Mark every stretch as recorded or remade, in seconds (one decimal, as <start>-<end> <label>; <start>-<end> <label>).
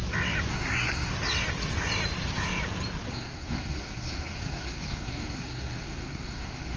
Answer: 0.0-0.5 recorded; 0.5-1.1 remade; 1.1-3.1 recorded; 3.1-6.8 remade